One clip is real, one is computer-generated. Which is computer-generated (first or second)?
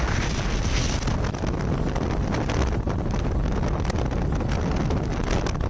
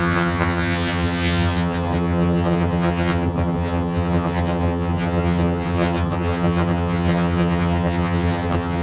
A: second